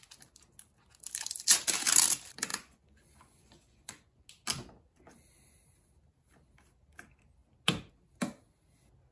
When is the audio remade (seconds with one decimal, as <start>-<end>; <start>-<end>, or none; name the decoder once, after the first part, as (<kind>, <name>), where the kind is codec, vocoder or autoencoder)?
2.5-4.3 (vocoder, Vocos)